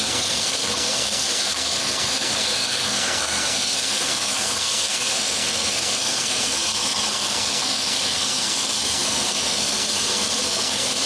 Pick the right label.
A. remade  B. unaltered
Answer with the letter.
A